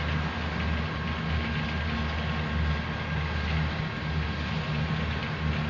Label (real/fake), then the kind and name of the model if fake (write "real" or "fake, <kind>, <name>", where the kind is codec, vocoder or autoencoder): real